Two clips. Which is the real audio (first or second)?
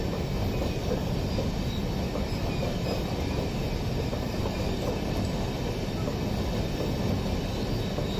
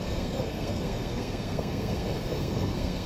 first